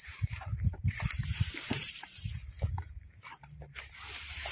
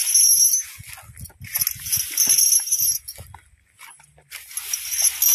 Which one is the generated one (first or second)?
first